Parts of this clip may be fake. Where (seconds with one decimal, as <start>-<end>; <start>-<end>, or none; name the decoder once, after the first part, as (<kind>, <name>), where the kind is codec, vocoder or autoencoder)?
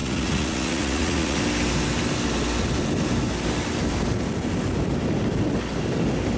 0.0-1.4 (vocoder, Vocos)